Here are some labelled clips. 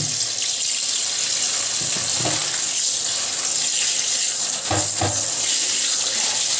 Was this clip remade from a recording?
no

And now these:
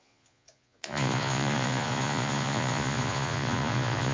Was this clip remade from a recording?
yes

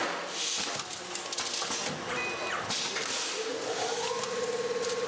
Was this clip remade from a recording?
no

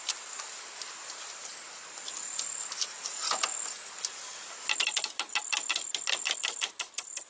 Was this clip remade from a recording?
no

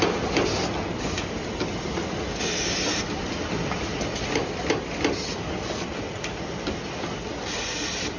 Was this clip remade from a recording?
no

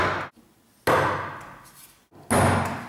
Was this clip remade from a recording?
no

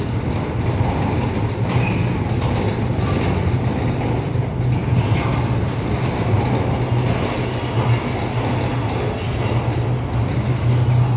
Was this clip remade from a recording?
no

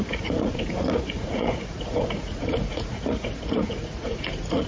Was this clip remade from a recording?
yes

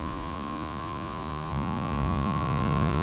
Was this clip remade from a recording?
yes